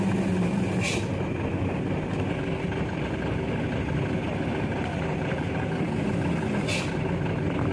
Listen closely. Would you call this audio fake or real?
real